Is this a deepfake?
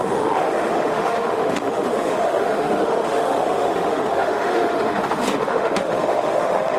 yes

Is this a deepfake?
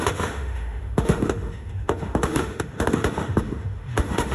yes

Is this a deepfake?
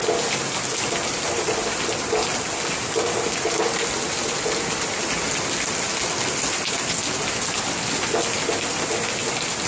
no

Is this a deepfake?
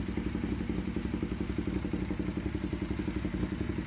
no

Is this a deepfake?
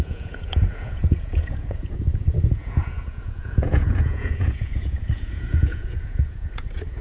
yes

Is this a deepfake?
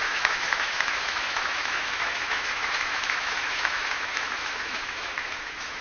yes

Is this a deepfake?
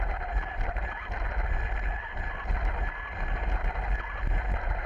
no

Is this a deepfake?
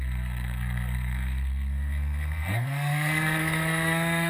yes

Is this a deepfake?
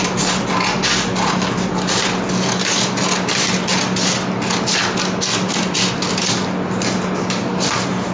no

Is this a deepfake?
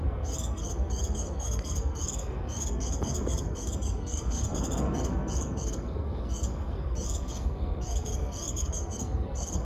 yes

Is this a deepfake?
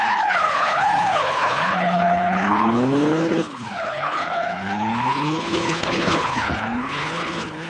yes